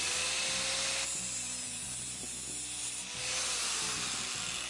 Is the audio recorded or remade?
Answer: recorded